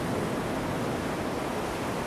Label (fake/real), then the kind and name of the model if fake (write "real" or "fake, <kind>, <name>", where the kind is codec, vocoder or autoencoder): real